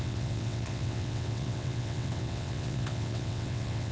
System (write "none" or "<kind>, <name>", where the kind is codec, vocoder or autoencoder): vocoder, WaveNeXt